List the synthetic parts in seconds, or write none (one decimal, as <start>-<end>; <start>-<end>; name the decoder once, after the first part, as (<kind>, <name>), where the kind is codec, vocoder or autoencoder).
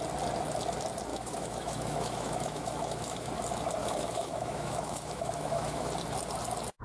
1.1-3.3 (autoencoder, DAC-VAE); 3.8-5.9